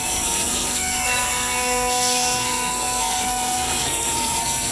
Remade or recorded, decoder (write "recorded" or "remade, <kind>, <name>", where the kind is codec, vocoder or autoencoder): remade, codec, SNAC